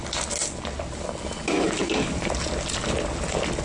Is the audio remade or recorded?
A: recorded